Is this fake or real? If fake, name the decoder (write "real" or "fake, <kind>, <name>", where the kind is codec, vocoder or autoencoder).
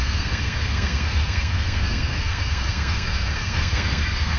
fake, codec, SNAC